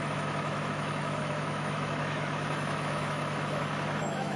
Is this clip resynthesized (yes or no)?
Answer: yes